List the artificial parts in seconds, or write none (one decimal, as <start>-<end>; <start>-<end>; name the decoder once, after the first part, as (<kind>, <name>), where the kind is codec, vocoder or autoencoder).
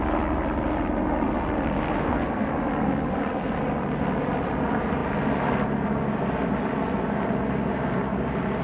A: 1.9-2.5 (codec, SNAC)